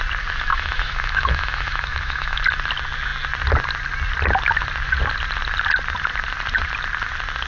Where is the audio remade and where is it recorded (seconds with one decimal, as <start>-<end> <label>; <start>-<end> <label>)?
0.0-0.5 recorded; 0.5-2.4 remade; 2.4-7.5 recorded